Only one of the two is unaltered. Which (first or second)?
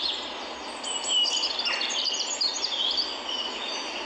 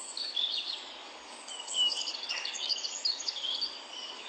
first